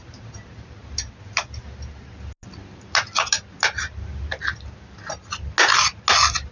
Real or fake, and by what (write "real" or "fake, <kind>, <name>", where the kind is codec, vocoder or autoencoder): real